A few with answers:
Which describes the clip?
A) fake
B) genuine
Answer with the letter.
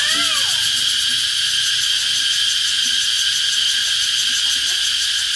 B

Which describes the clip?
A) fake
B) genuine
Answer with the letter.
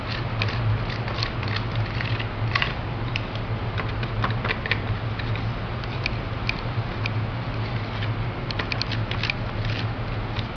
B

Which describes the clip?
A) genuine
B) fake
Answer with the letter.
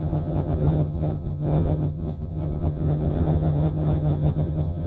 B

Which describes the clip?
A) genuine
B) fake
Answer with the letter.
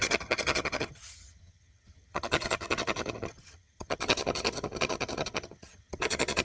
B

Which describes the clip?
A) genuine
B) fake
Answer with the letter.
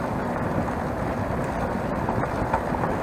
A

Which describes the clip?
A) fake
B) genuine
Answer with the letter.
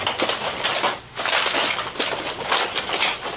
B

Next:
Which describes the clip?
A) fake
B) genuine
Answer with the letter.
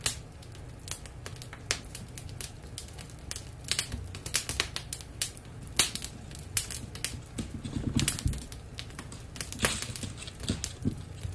B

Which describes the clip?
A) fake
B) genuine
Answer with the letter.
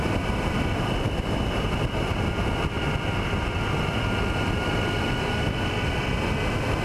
B